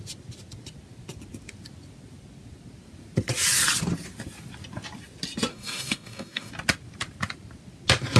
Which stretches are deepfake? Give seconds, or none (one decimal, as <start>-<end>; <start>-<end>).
5.5-6.5